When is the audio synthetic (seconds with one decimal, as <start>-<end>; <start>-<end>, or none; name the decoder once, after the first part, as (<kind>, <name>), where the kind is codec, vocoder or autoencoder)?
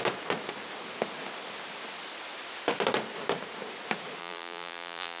4.2-5.2 (vocoder, BigVGAN v2)